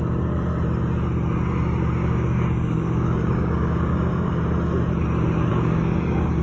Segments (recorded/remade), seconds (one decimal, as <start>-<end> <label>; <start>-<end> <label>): 0.0-2.0 recorded; 2.0-4.4 remade; 4.4-5.5 recorded; 5.5-6.4 remade